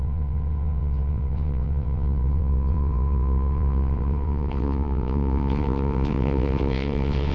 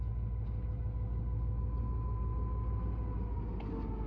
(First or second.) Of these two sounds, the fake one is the first